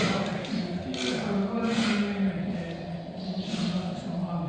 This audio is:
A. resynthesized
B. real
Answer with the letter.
B